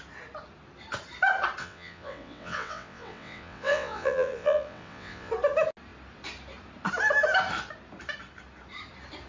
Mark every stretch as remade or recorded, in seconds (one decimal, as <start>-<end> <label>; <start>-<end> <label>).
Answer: 0.0-1.6 recorded; 1.6-5.3 remade; 5.3-9.3 recorded